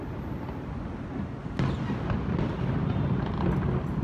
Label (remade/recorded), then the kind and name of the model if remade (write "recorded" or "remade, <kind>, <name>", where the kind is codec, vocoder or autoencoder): recorded